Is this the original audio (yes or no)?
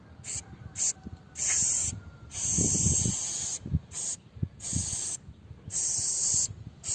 yes